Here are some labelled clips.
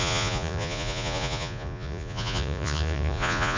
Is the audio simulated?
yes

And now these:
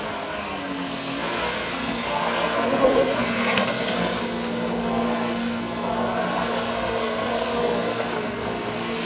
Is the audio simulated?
yes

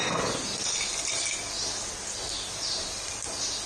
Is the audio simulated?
no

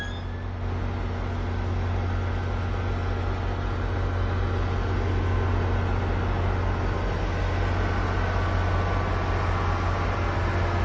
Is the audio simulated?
no